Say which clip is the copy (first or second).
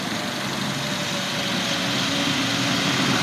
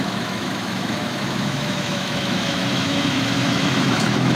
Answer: second